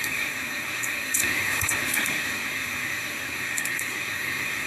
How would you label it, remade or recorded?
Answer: remade